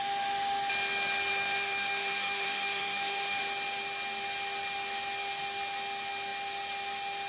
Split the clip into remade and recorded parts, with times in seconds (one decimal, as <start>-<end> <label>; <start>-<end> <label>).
0.0-1.3 recorded; 1.3-3.4 remade; 3.4-7.3 recorded